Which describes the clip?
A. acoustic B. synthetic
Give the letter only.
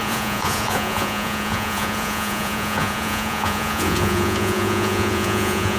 B